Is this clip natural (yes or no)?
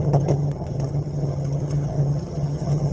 no